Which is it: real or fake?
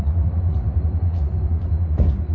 fake